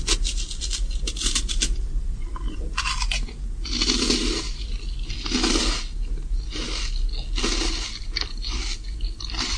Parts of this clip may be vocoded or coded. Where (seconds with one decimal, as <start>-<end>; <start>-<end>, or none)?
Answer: none